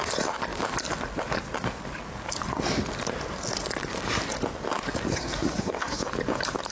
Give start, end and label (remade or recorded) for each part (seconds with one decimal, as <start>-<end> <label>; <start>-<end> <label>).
0.0-5.1 recorded; 5.1-6.0 remade; 6.0-6.7 recorded